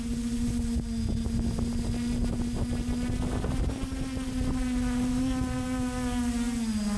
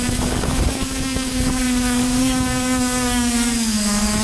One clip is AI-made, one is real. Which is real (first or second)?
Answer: first